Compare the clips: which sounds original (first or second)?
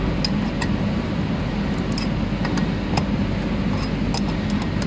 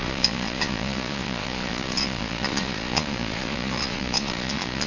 first